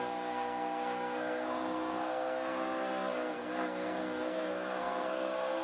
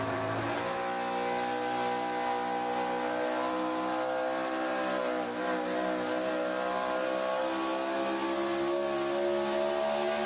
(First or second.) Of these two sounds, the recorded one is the second